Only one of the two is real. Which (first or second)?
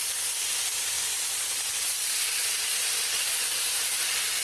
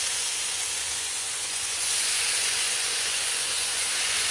first